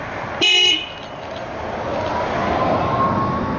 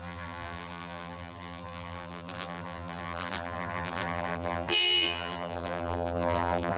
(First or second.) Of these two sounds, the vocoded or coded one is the second